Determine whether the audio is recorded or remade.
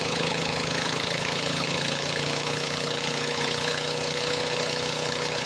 remade